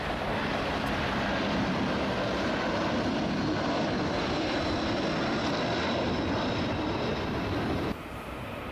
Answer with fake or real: fake